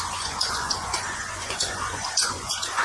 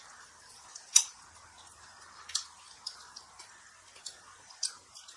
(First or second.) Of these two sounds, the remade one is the first